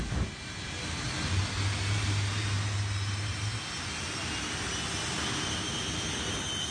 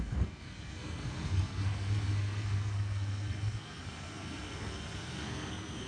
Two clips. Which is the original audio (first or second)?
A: first